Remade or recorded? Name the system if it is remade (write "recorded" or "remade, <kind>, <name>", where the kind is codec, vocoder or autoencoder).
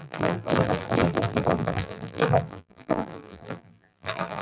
remade, vocoder, BigVGAN v2